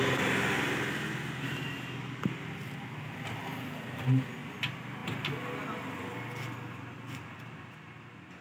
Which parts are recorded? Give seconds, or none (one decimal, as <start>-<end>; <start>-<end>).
0.0-8.4